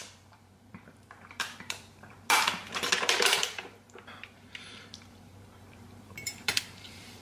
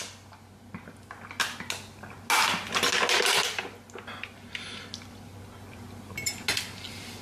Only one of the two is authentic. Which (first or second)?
second